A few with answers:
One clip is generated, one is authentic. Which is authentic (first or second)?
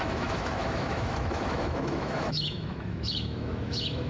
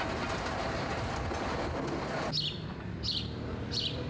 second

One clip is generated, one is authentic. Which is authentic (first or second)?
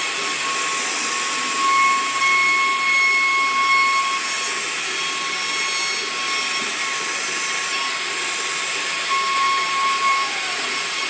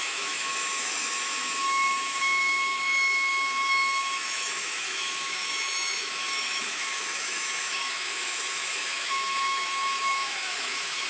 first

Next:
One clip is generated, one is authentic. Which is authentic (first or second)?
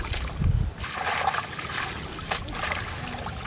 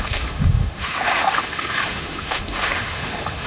first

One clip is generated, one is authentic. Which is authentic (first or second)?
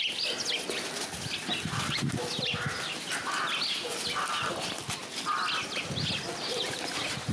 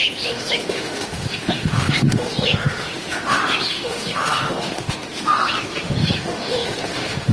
first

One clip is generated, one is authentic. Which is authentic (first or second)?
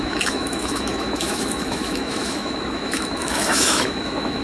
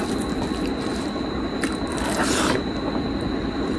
second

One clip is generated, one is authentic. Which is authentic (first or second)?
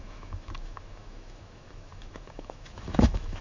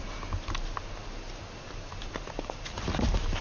second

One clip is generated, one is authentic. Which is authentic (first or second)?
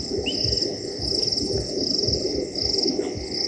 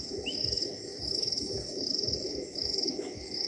first